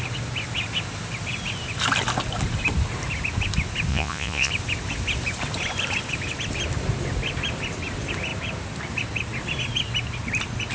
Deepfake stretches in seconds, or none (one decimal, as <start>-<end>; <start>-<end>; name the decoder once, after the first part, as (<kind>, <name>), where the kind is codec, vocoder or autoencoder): 3.9-4.5 (vocoder, Vocos)